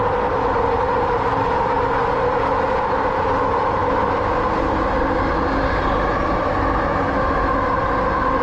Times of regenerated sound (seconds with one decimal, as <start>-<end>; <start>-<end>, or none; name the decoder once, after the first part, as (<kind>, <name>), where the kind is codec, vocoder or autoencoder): none